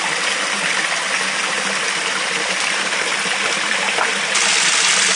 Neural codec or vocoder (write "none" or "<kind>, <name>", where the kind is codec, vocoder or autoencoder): none